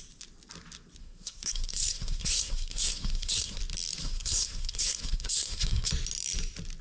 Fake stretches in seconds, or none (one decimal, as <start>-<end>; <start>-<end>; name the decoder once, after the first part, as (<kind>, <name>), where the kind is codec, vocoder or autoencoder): 1.0-3.6 (codec, SNAC); 4.0-5.9